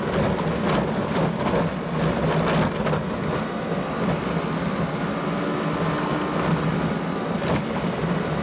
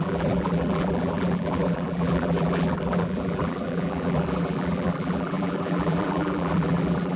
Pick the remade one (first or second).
second